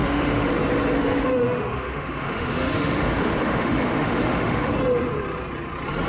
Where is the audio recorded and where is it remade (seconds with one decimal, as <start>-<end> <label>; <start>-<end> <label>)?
0.0-0.5 remade; 0.5-1.0 recorded; 1.0-4.7 remade; 4.7-6.1 recorded